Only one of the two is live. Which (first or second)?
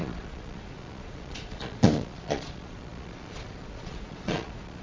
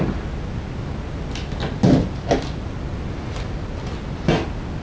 second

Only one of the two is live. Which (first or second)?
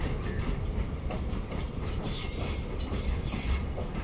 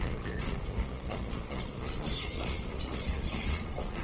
first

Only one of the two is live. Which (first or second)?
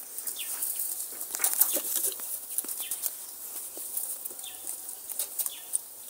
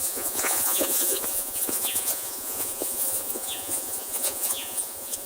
first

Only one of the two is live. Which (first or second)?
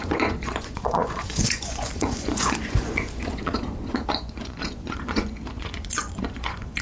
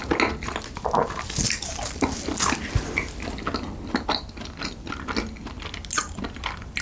second